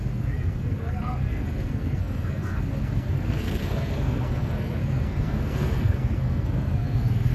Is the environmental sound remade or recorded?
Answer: remade